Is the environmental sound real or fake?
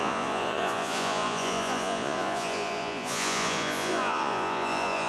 fake